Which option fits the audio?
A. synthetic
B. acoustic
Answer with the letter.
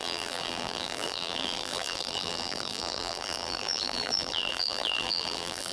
A